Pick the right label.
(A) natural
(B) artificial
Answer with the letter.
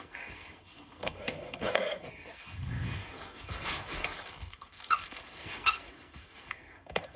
B